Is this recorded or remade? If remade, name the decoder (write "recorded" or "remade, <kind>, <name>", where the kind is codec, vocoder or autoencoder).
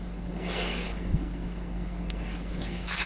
remade, codec, SNAC